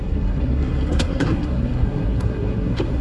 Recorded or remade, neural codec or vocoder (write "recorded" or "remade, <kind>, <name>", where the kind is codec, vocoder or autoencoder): remade, codec, SNAC